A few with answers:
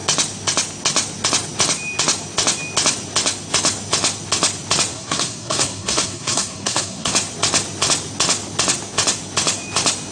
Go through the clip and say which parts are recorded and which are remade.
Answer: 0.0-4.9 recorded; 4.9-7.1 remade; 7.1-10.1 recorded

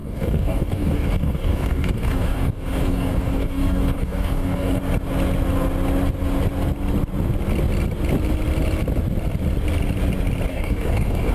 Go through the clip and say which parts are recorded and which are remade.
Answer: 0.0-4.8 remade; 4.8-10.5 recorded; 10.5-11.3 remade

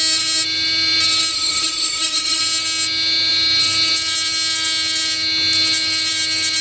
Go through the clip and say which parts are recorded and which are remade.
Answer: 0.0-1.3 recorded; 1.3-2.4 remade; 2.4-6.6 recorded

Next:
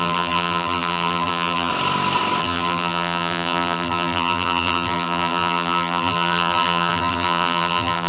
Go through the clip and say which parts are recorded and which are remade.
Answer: 0.0-1.7 remade; 1.7-2.4 recorded; 2.4-8.1 remade

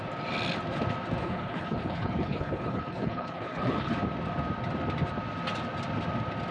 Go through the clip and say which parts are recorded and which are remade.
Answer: 0.0-1.2 recorded; 1.2-3.9 remade; 3.9-6.5 recorded

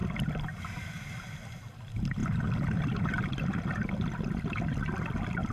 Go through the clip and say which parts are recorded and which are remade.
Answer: 0.0-5.5 recorded

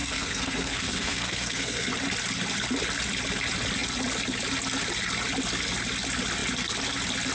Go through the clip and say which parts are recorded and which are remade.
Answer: 0.0-1.9 remade; 1.9-7.3 recorded